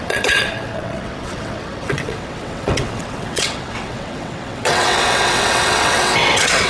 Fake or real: fake